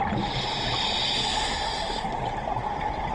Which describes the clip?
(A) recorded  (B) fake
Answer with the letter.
A